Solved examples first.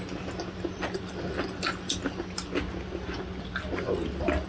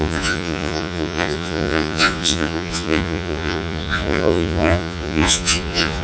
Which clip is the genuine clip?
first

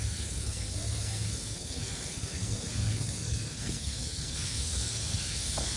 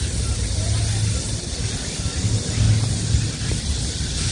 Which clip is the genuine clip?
second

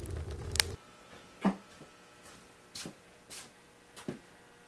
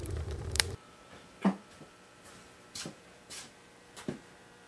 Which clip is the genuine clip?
first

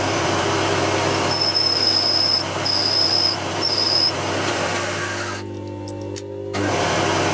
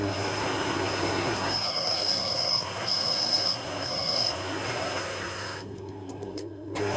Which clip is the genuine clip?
first